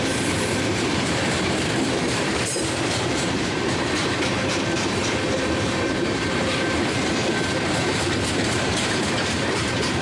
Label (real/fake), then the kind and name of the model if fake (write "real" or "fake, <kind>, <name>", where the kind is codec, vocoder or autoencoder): fake, vocoder, BigVGAN v2